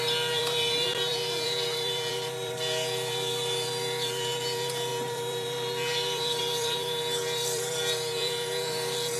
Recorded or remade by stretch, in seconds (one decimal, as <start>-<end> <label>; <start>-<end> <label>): 0.0-9.2 remade